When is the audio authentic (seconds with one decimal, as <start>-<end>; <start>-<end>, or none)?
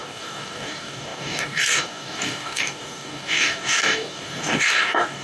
none